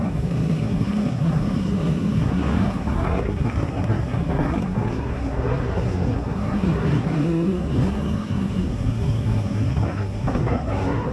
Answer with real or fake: fake